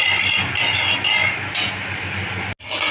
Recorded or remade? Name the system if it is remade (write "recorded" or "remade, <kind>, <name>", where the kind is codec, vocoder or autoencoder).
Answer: recorded